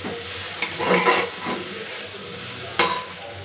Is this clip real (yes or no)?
yes